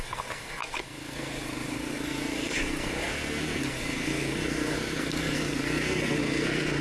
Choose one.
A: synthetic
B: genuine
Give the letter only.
A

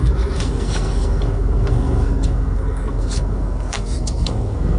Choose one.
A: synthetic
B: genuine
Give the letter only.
A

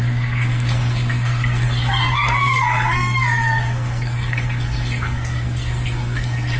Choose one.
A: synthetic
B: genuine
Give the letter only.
A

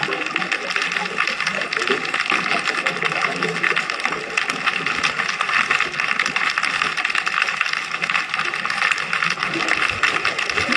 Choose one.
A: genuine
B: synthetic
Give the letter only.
A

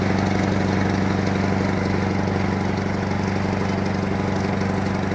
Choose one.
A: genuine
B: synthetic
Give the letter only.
A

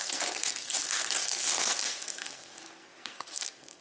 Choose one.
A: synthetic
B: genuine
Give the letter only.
A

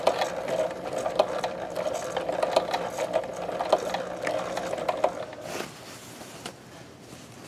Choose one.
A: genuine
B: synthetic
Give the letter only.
A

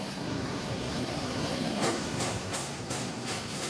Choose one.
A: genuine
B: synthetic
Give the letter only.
B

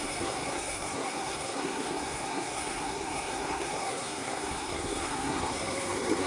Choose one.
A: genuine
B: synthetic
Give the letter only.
B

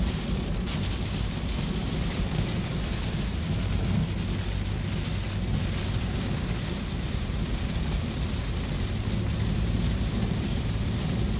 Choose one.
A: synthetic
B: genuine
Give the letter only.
B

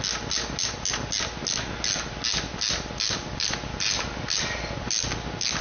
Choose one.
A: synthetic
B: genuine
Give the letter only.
B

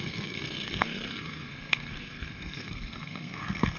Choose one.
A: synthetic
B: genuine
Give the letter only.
A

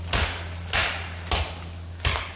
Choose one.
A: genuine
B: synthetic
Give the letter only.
A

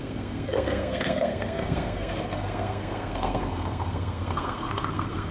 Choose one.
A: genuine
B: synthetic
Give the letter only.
B